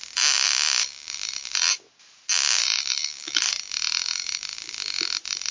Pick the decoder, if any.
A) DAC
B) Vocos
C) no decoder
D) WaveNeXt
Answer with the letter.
C